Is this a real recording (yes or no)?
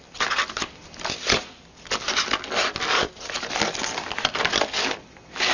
yes